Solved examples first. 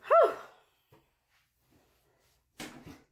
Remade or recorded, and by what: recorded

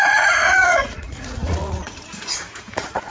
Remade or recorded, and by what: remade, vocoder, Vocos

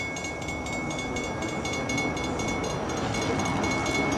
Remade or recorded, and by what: recorded